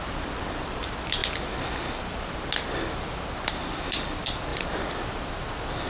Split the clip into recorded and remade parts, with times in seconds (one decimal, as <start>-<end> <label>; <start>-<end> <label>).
0.0-1.2 remade; 1.2-3.3 recorded; 3.3-5.9 remade